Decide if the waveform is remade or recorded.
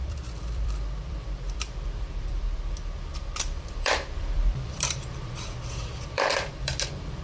remade